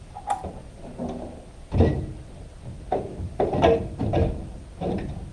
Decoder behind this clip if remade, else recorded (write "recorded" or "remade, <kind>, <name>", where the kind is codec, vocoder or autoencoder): recorded